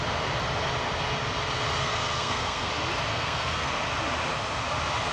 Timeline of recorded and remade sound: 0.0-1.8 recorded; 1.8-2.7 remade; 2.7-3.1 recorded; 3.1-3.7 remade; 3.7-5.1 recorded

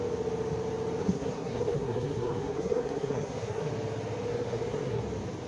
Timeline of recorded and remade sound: 0.0-1.0 recorded; 1.0-3.7 remade; 3.7-4.3 recorded; 4.3-5.0 remade; 5.0-5.5 recorded

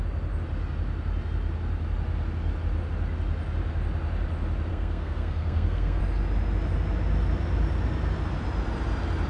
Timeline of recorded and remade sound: 0.0-4.7 recorded; 4.7-6.0 remade; 6.0-9.3 recorded

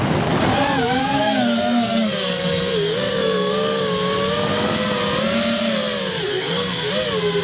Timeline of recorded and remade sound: 0.0-1.0 recorded; 1.0-3.8 remade; 3.8-6.3 recorded; 6.3-6.9 remade; 6.9-7.4 recorded

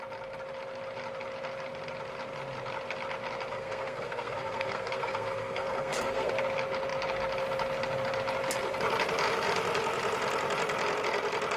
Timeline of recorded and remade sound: 0.0-3.5 recorded; 3.5-6.3 remade; 6.3-11.6 recorded